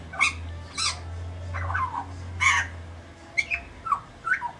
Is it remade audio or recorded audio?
recorded